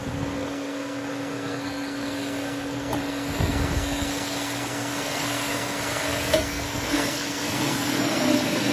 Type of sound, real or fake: fake